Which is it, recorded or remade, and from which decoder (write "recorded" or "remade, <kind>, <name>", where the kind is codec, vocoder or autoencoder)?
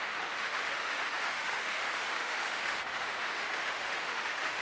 remade, autoencoder, DAC-VAE